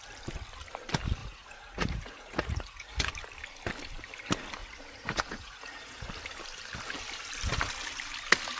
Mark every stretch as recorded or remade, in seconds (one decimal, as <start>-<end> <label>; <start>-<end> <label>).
0.0-1.2 recorded; 1.2-3.1 remade; 3.1-4.6 recorded; 4.6-6.1 remade; 6.1-8.6 recorded